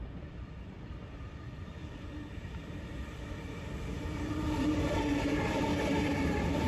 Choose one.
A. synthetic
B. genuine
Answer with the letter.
A